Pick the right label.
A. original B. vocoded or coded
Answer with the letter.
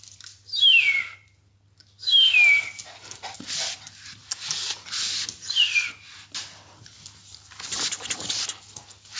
A